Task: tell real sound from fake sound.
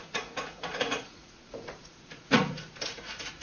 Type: fake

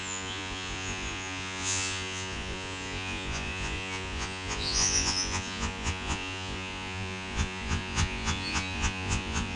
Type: fake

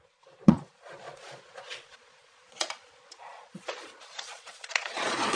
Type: fake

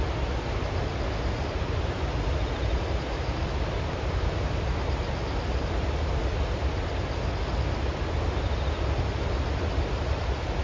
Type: real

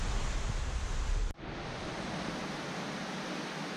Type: real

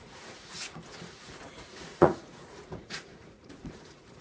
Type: fake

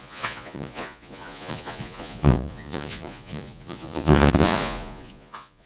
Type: fake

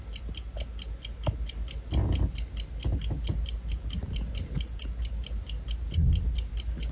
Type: real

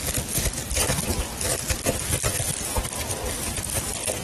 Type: real